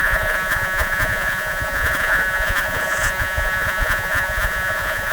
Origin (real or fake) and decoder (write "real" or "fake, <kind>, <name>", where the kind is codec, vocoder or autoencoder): fake, vocoder, Vocos